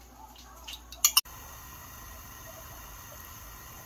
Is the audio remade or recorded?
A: recorded